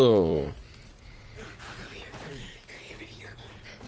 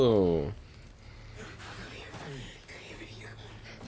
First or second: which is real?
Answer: second